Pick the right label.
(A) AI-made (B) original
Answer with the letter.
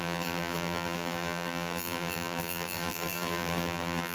A